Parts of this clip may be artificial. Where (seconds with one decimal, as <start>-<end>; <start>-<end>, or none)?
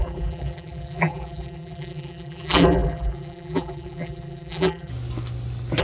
0.0-4.9